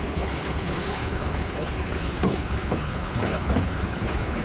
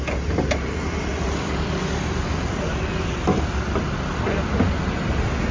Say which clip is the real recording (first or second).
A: second